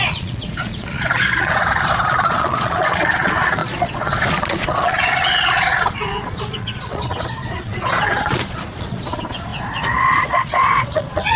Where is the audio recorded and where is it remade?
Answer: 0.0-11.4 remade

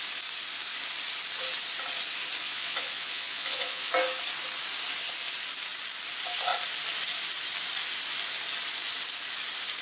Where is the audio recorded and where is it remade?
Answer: 0.0-2.4 recorded; 2.4-3.9 remade; 3.9-9.8 recorded

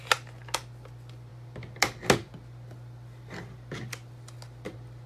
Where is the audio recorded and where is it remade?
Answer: 0.0-5.1 recorded

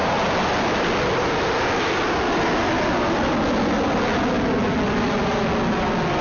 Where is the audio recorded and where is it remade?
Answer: 0.0-6.2 recorded

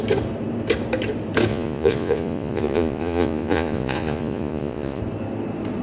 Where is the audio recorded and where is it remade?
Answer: 0.0-1.5 recorded; 1.5-5.0 remade; 5.0-5.8 recorded

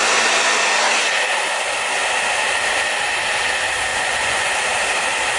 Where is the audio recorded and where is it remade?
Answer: 0.0-3.9 recorded; 3.9-4.5 remade; 4.5-5.4 recorded